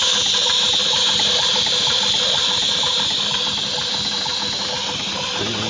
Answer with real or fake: real